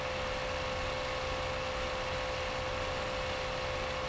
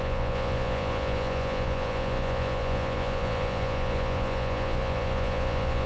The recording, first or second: first